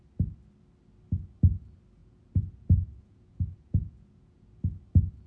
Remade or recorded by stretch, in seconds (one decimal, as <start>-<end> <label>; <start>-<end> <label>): 0.0-2.0 recorded; 2.0-4.6 remade; 4.6-5.3 recorded